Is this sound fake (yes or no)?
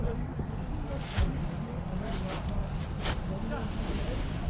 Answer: no